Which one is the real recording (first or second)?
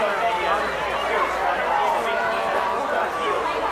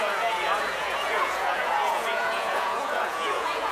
first